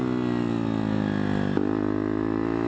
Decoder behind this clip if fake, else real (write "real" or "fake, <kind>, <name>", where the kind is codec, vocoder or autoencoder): real